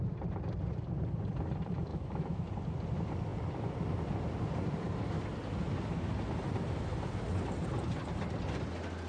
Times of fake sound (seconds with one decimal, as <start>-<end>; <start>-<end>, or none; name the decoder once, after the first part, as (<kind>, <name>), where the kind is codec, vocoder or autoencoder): 1.9-2.5 (autoencoder, DAC-VAE)

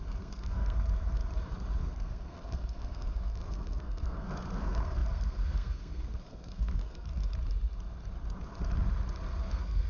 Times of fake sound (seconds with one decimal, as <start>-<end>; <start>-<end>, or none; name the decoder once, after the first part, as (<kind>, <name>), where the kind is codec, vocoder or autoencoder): 0.0-1.2 (codec, SNAC); 1.8-7.3; 9.4-9.9

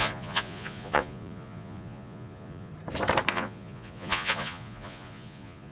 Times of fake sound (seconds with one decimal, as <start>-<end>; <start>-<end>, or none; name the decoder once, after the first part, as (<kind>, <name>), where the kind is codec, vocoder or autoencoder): 0.0-2.7 (vocoder, Vocos); 3.3-5.7